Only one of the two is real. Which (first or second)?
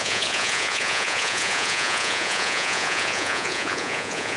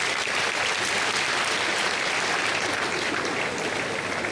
second